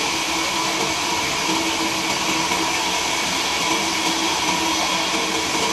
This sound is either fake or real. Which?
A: real